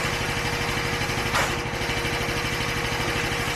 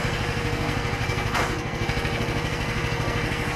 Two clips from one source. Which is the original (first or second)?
first